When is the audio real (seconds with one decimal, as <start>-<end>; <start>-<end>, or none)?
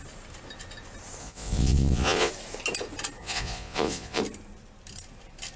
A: 0.0-1.2; 2.3-3.2; 4.2-5.6